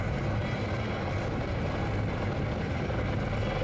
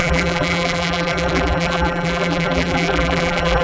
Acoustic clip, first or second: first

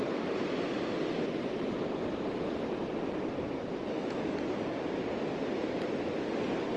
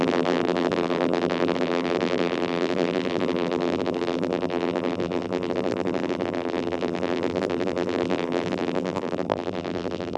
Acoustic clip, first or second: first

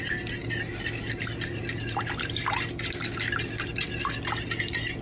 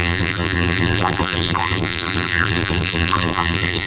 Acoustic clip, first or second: first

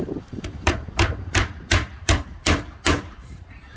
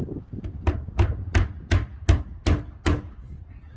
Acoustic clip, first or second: second